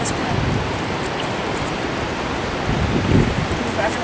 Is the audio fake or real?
real